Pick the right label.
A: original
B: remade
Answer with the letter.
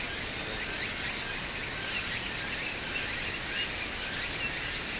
A